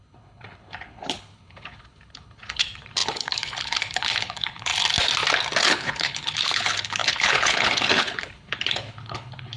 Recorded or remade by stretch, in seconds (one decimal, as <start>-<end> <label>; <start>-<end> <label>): 0.0-4.7 remade; 4.7-5.6 recorded; 5.6-9.6 remade

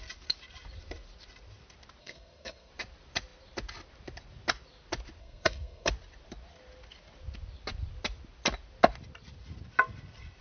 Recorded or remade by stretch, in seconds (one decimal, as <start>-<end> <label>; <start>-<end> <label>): 0.0-2.0 recorded; 2.0-2.7 remade; 2.7-5.2 recorded; 5.2-5.9 remade; 5.9-10.4 recorded

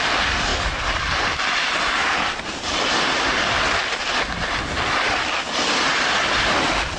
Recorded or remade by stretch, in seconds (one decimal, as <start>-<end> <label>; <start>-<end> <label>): 0.0-7.0 recorded

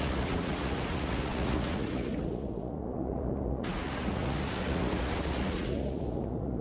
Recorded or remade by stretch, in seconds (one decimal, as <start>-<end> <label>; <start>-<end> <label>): 0.0-6.6 remade

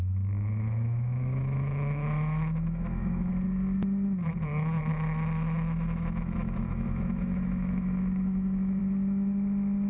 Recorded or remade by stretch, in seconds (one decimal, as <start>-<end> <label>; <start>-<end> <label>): 0.0-3.3 remade; 3.3-4.9 recorded; 4.9-8.8 remade; 8.8-9.9 recorded